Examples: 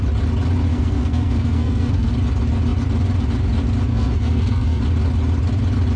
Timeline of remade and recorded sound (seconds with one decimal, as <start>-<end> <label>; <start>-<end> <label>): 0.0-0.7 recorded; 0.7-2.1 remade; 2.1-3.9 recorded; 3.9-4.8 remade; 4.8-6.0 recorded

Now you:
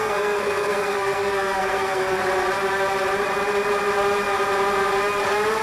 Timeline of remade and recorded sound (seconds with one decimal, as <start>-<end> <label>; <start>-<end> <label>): 0.0-2.2 remade; 2.2-5.6 recorded

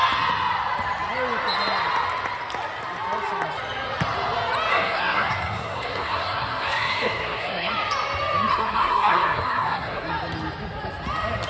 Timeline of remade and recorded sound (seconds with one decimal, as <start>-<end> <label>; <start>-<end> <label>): 0.0-4.7 recorded; 4.7-7.7 remade; 7.7-8.5 recorded; 8.5-10.1 remade; 10.1-11.5 recorded

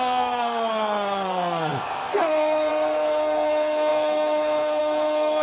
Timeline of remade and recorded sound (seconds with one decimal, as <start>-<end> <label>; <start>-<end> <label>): 0.0-5.4 remade

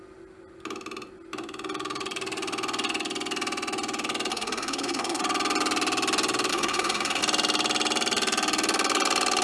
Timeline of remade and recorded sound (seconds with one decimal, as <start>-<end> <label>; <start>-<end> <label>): 0.0-4.3 recorded; 4.3-5.2 remade; 5.2-6.5 recorded; 6.5-7.2 remade; 7.2-9.4 recorded